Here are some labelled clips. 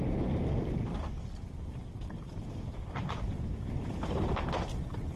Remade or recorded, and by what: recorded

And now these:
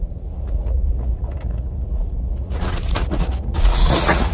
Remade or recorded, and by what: remade, vocoder, Vocos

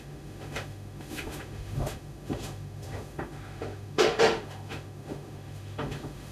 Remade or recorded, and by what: remade, autoencoder, DAC-VAE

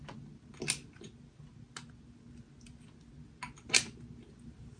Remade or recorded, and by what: recorded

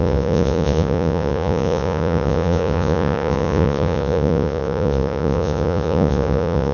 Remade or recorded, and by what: remade, vocoder, Vocos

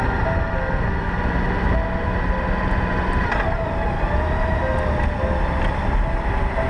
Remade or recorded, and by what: recorded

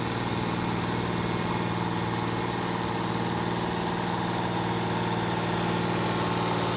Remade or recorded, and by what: recorded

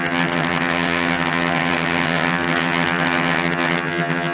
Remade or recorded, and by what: remade, vocoder, HiFi-GAN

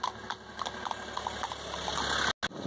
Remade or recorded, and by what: recorded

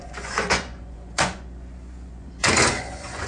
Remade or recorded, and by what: remade, vocoder, Vocos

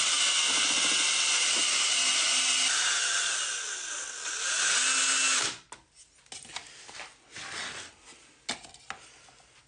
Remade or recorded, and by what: recorded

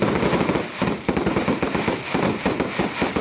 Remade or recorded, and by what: recorded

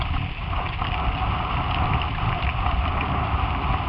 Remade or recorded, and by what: recorded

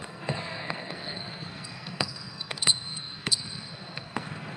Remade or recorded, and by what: remade, codec, SNAC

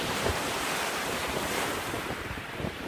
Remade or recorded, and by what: remade, vocoder, BigVGAN v2